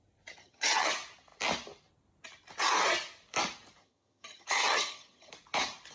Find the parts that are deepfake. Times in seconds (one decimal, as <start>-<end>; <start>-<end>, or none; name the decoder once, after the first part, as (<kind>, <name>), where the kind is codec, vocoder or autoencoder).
0.4-0.9 (vocoder, HiFi-GAN); 3.8-5.3